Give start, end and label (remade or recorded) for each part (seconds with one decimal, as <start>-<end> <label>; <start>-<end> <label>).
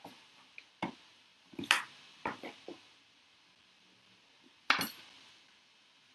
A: 0.0-6.1 recorded